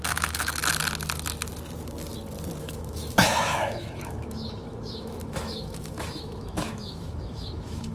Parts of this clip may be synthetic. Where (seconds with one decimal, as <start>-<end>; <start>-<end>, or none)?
0.0-0.6; 2.6-7.9